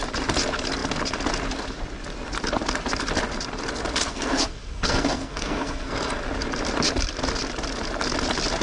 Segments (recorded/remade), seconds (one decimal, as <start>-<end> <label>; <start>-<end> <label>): 0.0-4.1 recorded; 4.1-6.2 remade; 6.2-8.6 recorded